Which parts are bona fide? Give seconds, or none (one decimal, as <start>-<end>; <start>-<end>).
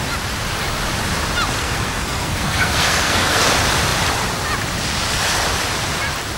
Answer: 0.0-1.6; 3.4-6.4